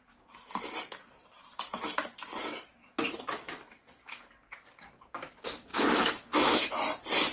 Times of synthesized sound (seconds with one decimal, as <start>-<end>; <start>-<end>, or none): 2.8-4.2; 5.7-6.7